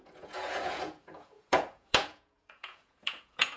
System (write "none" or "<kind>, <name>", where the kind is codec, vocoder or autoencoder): vocoder, Vocos